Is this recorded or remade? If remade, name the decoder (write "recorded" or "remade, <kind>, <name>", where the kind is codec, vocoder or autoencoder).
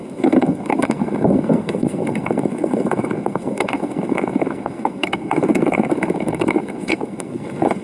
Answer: remade, codec, SNAC